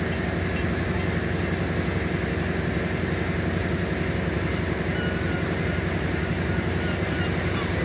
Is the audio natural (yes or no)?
yes